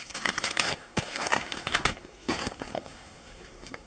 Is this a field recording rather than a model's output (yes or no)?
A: no